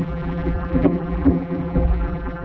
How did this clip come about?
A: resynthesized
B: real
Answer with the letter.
A